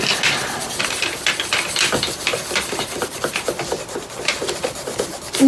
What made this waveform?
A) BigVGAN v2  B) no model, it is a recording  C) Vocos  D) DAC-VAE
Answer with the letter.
A